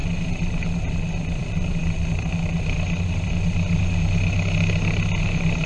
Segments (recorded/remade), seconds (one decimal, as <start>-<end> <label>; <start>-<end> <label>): 0.0-0.6 recorded; 0.6-1.8 remade; 1.8-5.2 recorded; 5.2-5.7 remade